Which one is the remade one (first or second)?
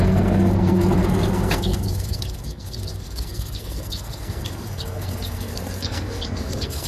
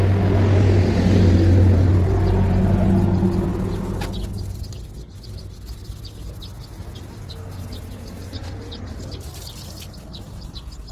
first